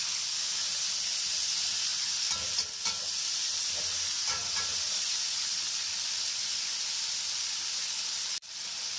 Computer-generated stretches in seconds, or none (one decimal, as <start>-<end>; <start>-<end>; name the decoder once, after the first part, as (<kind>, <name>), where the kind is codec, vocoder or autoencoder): none